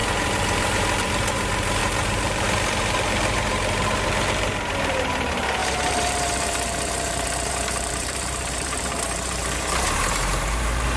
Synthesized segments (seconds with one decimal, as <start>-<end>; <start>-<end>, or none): 0.0-11.0